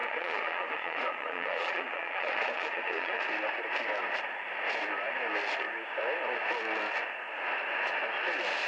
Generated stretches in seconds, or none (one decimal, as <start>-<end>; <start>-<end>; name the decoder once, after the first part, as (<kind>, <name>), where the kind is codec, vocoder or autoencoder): 0.0-3.2 (vocoder, Vocos)